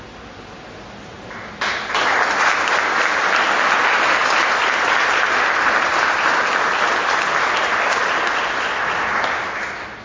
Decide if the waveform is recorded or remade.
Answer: recorded